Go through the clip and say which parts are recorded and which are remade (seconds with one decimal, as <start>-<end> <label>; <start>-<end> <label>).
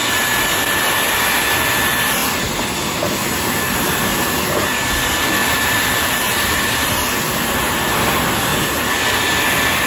0.0-5.4 recorded; 5.4-6.9 remade; 6.9-9.9 recorded